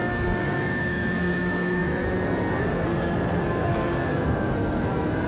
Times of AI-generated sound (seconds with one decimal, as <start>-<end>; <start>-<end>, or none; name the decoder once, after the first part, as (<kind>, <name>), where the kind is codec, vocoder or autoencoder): 0.0-5.3 (codec, SNAC)